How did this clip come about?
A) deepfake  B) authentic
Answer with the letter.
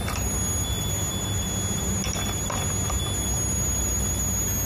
B